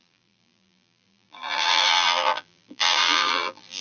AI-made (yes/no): yes